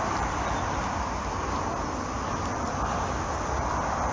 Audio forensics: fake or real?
real